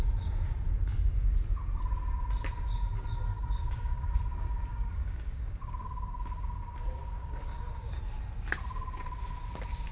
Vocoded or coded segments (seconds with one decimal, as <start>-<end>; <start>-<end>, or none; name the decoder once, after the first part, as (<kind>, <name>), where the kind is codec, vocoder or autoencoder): 3.3-4.1 (codec, DAC); 4.7-5.6; 7.2-8.0